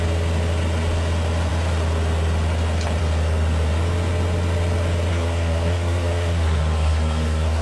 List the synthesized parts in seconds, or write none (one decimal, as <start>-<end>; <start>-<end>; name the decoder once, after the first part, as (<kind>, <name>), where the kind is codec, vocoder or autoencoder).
5.1-7.6 (codec, SNAC)